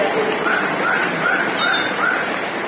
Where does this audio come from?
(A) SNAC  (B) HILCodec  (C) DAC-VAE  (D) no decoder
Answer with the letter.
D